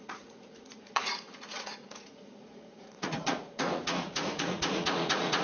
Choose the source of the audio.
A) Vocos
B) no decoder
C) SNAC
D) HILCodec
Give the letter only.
A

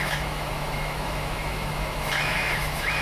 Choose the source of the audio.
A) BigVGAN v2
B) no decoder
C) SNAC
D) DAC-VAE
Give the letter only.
D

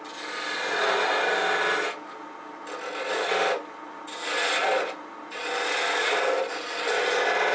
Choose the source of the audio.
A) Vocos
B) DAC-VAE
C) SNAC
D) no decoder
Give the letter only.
D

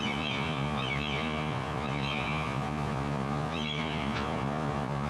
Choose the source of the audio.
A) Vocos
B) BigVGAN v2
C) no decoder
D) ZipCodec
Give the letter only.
A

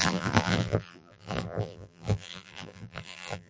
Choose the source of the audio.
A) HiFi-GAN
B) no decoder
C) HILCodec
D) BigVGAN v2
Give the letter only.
D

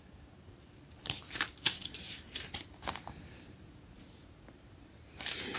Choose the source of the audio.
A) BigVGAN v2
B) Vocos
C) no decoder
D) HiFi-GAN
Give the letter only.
A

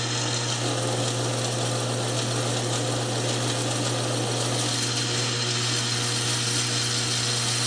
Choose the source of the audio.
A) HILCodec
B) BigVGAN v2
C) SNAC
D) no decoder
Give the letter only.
D